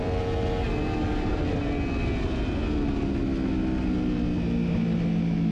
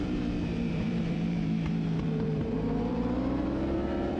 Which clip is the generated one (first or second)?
second